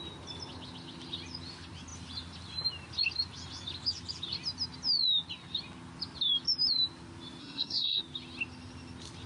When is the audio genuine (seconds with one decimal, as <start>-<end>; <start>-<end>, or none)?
0.0-7.4; 8.0-9.3